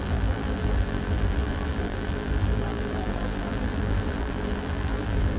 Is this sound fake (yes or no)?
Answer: yes